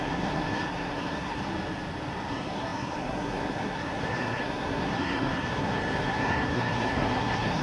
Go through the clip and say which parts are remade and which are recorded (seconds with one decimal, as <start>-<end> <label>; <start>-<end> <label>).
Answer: 0.0-1.4 remade; 1.4-2.3 recorded; 2.3-7.6 remade